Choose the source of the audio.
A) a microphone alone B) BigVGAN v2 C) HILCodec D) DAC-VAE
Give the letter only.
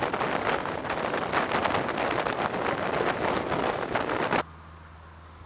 A